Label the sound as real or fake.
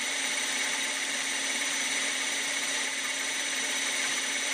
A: fake